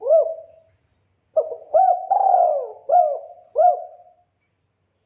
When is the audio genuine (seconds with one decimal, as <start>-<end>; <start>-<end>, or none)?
0.0-5.1